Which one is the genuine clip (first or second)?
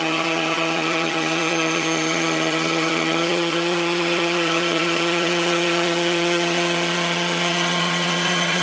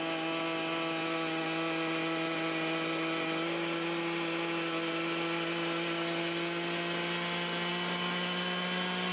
second